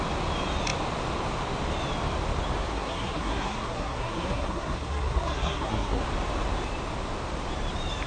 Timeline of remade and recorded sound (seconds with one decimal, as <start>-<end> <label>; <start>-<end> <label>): 0.0-2.7 recorded; 2.7-6.0 remade; 6.0-8.1 recorded